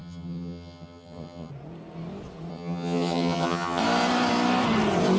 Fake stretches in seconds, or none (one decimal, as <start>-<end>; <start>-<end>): 0.0-1.5; 2.5-3.8